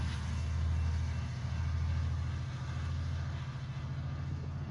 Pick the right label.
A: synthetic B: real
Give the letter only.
B